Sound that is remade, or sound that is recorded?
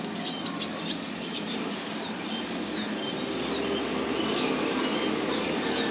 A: recorded